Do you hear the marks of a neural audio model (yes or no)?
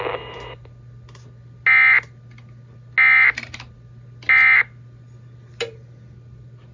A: no